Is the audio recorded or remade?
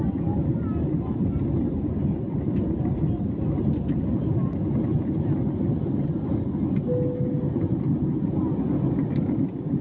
recorded